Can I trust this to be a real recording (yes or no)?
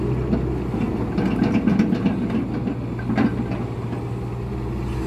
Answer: yes